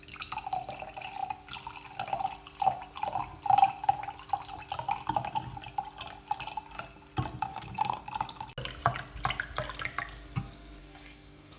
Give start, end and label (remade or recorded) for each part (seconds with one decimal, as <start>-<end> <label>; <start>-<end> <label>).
0.0-7.5 recorded; 7.5-8.0 remade; 8.0-10.8 recorded; 10.8-11.6 remade

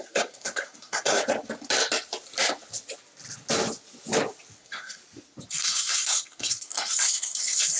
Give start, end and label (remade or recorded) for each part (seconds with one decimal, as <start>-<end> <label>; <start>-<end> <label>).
0.0-1.2 remade; 1.2-4.6 recorded; 4.6-5.0 remade; 5.0-5.5 recorded; 5.5-7.8 remade

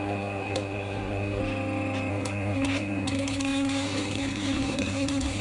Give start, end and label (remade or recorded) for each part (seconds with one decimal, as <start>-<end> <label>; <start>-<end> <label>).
0.0-1.4 remade; 1.4-2.1 recorded; 2.1-5.4 remade

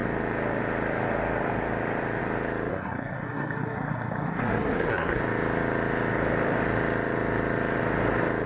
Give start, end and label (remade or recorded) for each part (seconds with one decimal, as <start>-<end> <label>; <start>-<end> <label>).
0.0-2.7 recorded; 2.7-5.2 remade; 5.2-8.5 recorded

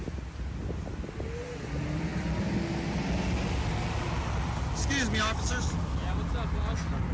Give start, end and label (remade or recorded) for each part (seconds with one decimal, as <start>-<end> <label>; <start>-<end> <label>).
0.0-7.1 recorded

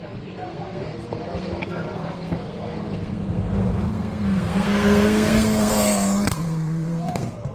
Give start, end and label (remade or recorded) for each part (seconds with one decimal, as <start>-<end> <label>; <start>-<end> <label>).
0.0-7.5 remade

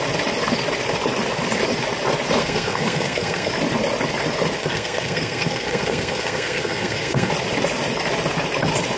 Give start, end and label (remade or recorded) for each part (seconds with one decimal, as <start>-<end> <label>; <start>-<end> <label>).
0.0-2.4 recorded; 2.4-3.5 remade; 3.5-4.6 recorded; 4.6-7.3 remade; 7.3-9.0 recorded